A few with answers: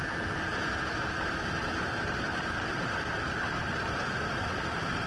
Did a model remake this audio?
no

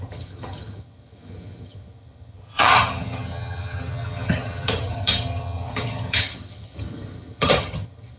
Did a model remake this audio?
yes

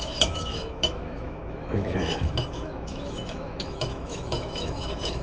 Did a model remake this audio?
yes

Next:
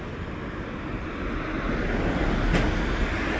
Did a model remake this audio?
no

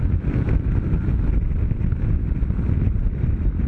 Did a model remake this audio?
no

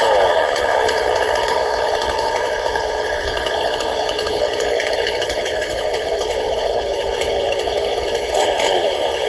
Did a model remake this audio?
yes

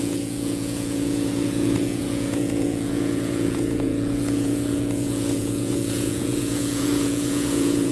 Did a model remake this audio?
yes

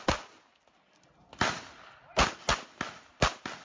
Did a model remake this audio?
no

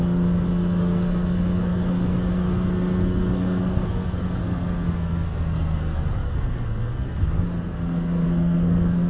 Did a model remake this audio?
yes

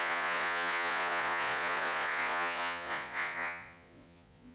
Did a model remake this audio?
yes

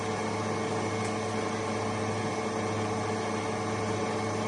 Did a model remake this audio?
no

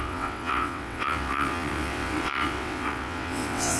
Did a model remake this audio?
yes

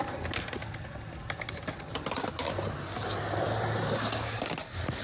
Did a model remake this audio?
no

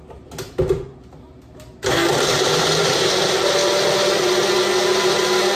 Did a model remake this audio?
no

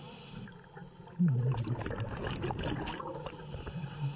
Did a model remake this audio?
no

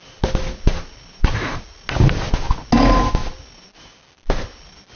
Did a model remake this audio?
no